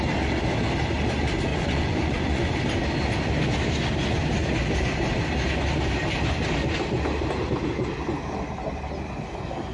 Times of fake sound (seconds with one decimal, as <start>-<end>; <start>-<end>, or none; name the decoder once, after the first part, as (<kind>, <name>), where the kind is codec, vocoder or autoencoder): 1.5-2.5 (vocoder, Vocos)